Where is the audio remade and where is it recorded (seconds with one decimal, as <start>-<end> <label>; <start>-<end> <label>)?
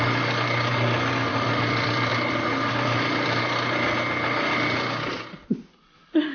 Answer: 0.0-6.3 recorded